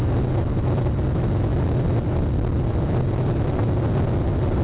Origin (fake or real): real